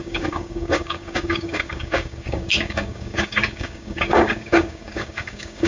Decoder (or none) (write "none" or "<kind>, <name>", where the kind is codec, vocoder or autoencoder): codec, DAC